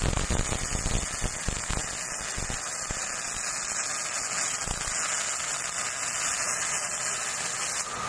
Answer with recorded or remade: recorded